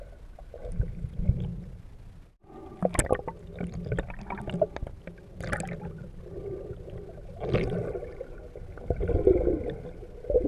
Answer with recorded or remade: recorded